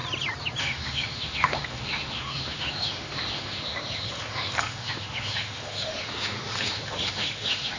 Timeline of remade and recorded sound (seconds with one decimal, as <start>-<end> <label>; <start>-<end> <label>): 0.0-0.6 recorded; 0.6-7.8 remade